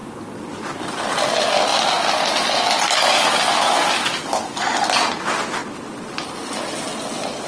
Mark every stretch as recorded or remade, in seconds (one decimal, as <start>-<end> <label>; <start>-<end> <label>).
0.0-7.5 recorded